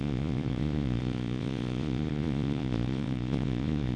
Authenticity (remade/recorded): remade